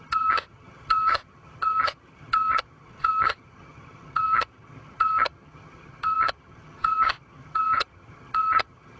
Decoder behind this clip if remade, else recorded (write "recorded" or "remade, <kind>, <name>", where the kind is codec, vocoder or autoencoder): remade, vocoder, HiFi-GAN